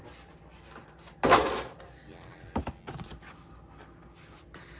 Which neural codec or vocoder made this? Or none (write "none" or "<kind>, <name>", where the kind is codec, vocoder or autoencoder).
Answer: none